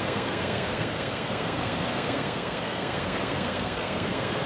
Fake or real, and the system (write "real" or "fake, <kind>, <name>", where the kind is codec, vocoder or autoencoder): fake, codec, SNAC